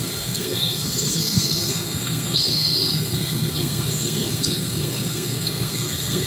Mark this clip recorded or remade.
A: remade